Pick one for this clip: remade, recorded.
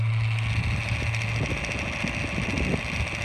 recorded